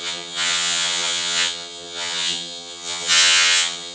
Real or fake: fake